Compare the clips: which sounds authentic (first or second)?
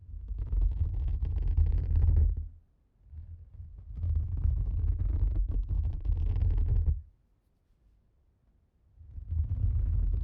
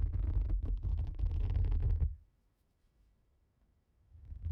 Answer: first